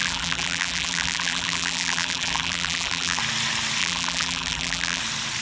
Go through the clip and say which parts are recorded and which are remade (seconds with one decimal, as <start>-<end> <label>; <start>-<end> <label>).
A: 0.0-3.2 remade; 3.2-3.8 recorded; 3.8-5.0 remade; 5.0-5.4 recorded